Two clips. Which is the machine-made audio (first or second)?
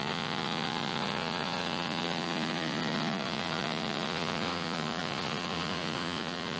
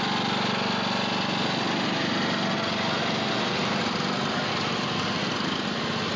first